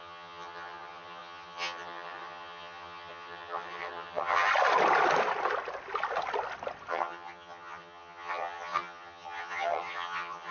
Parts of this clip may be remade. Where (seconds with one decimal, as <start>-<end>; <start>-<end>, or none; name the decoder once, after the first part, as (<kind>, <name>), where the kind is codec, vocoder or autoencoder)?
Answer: 0.0-4.5 (vocoder, HiFi-GAN); 6.9-10.5